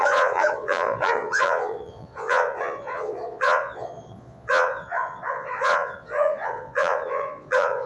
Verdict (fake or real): fake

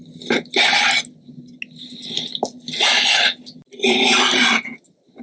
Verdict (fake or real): real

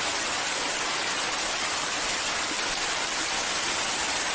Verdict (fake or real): real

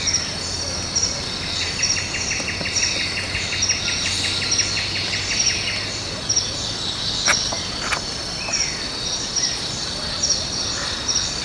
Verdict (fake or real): real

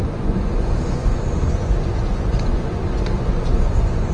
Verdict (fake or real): fake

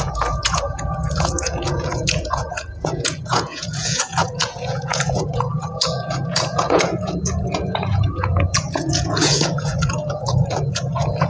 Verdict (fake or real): fake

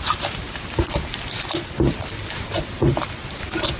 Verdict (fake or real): real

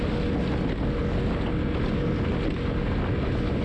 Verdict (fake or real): real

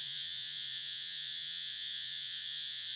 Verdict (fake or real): fake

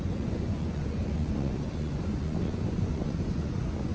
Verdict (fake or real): fake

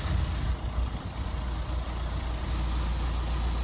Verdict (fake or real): real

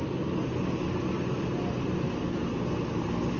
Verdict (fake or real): real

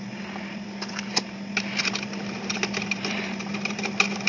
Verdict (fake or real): real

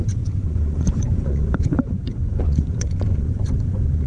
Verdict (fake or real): fake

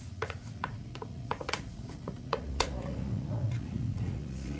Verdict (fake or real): fake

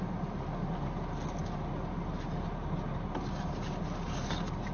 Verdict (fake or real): real